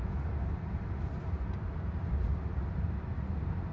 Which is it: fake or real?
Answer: real